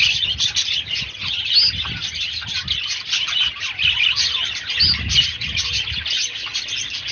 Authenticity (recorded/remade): recorded